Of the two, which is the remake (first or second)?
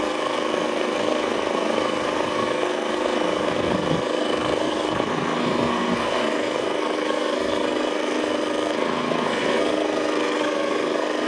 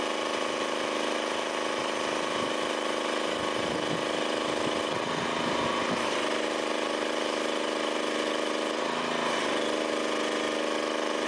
first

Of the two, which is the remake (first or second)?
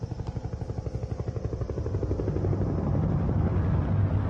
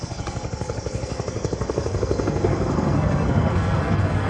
second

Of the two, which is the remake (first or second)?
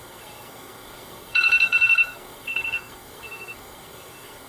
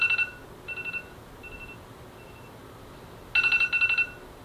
first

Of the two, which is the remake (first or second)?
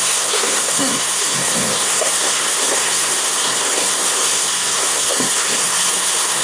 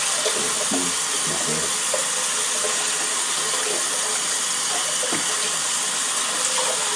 first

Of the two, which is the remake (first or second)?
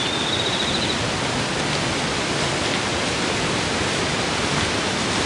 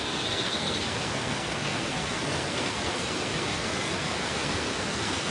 second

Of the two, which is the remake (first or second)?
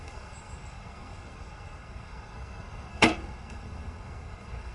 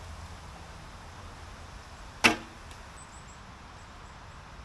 first